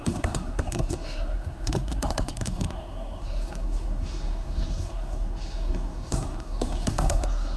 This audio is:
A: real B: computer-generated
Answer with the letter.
B